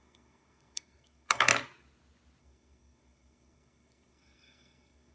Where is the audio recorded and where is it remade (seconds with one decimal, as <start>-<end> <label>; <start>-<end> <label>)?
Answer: 0.0-1.5 remade; 1.5-2.4 recorded; 2.4-5.1 remade